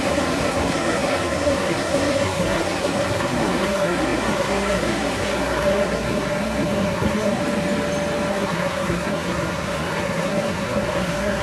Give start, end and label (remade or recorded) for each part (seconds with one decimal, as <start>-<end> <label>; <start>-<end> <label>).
0.0-7.4 remade; 7.4-8.3 recorded; 8.3-11.4 remade